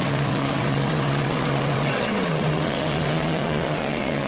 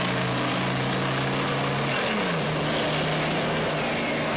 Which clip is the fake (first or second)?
first